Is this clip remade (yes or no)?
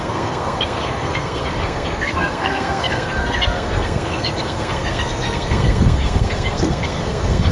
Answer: yes